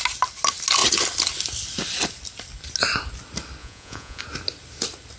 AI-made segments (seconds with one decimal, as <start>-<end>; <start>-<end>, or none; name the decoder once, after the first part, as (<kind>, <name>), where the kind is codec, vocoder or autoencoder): 3.6-4.2 (vocoder, Vocos)